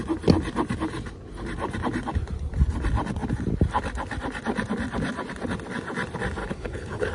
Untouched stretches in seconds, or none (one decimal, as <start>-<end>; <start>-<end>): 0.0-6.4